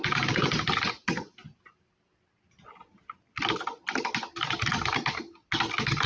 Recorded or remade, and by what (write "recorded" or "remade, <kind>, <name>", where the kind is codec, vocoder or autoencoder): recorded